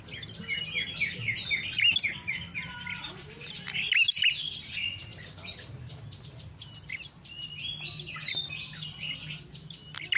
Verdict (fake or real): real